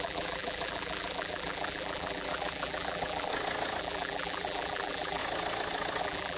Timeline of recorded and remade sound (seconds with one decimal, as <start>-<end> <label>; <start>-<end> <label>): 0.0-3.3 remade; 3.3-3.8 recorded; 3.8-5.2 remade; 5.2-6.0 recorded; 6.0-6.4 remade